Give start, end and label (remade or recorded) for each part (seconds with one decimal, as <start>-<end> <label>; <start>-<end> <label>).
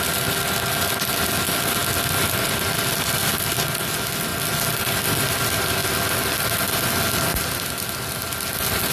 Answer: 0.0-8.9 recorded